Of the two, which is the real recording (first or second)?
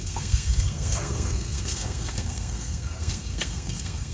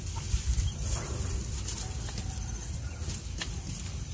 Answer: second